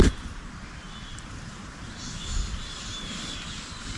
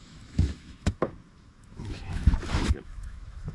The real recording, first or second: first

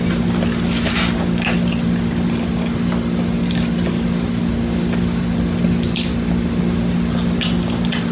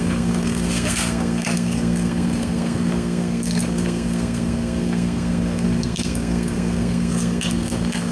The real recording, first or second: first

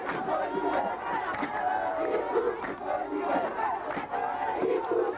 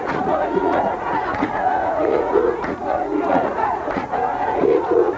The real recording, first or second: first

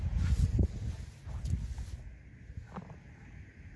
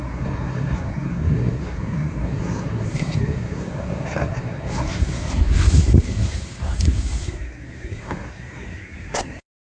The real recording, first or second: first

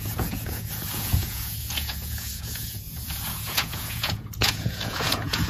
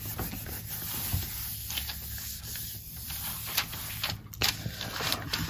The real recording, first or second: second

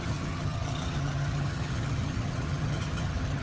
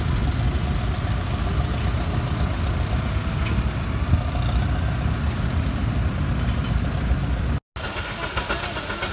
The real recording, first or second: second